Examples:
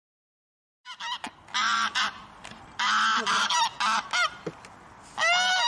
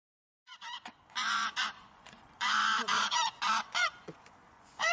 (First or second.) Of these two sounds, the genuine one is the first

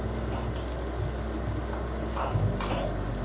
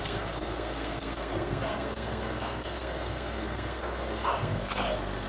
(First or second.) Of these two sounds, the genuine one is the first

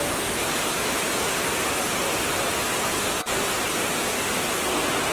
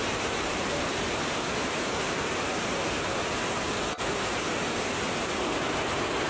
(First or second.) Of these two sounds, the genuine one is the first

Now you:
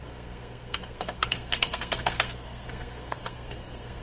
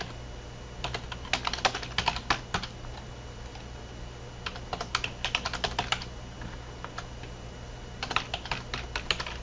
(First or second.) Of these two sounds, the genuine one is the second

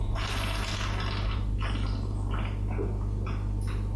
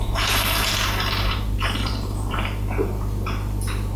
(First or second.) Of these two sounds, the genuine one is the first